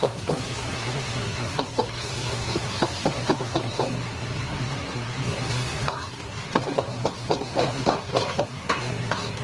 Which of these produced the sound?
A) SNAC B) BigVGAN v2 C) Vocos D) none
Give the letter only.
A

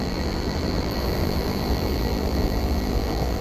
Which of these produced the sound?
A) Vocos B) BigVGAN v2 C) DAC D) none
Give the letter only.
B